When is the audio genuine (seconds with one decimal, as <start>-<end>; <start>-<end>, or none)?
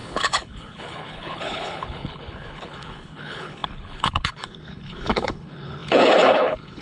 none